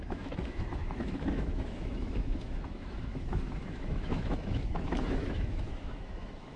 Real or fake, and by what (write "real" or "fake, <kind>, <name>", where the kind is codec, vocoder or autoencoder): fake, autoencoder, DAC-VAE